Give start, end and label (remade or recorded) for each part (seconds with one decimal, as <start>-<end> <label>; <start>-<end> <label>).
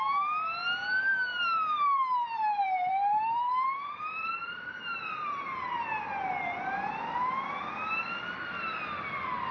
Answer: 0.0-1.3 recorded; 1.3-5.8 remade; 5.8-9.5 recorded